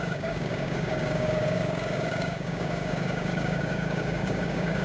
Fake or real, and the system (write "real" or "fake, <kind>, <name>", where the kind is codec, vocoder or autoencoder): fake, codec, DAC